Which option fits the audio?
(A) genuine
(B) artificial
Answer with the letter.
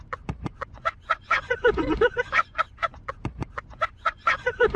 B